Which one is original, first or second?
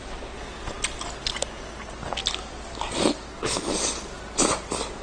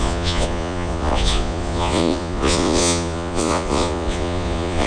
first